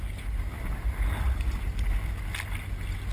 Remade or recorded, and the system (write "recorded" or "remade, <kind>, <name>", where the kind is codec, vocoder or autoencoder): recorded